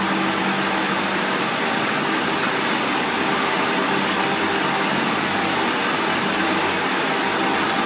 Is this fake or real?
real